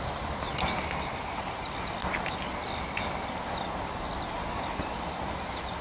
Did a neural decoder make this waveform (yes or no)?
no